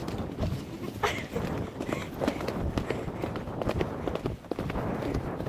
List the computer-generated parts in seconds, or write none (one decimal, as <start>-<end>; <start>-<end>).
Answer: none